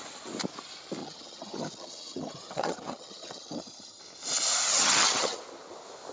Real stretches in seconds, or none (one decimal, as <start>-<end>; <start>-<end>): 0.0-1.0; 4.0-4.7; 5.4-6.1